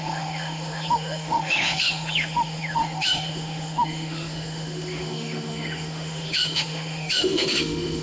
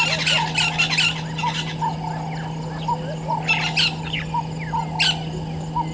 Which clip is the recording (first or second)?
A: second